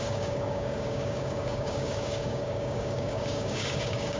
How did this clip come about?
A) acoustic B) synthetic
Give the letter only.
B